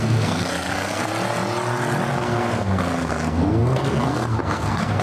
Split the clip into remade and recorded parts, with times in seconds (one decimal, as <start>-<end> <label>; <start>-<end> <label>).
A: 0.0-1.1 remade; 1.1-2.1 recorded; 2.1-5.0 remade